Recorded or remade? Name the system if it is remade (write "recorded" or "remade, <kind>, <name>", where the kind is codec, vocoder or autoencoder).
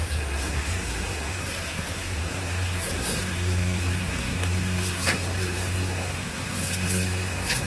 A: remade, codec, SNAC